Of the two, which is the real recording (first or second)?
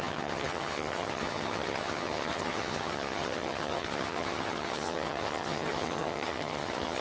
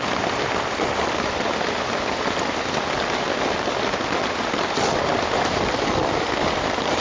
second